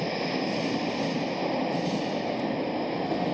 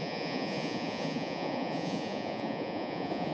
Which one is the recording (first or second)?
first